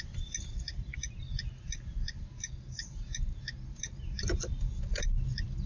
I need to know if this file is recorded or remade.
recorded